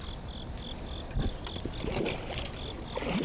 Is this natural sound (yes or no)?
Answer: yes